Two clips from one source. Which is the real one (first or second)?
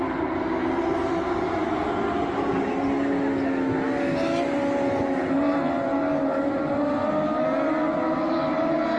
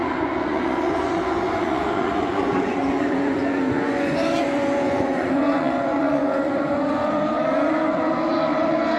first